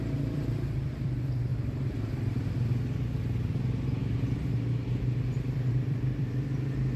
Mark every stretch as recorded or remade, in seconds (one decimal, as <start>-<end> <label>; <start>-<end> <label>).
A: 0.0-1.5 remade; 1.5-5.7 recorded; 5.7-7.0 remade

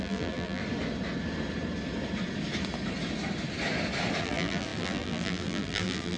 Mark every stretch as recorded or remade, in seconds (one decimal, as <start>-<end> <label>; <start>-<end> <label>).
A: 0.0-0.6 remade; 0.6-4.2 recorded; 4.2-6.2 remade

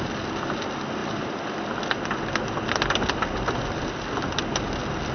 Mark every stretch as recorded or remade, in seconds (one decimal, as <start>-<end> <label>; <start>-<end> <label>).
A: 0.0-5.1 recorded

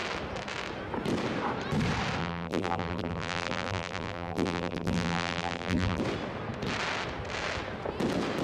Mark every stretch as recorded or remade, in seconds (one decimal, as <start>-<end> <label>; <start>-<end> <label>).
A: 0.0-2.2 recorded; 2.2-6.0 remade; 6.0-8.4 recorded

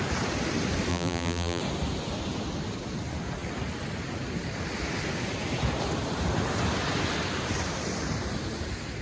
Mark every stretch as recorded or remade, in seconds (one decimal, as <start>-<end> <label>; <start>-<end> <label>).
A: 0.0-0.9 recorded; 0.9-1.6 remade; 1.6-9.0 recorded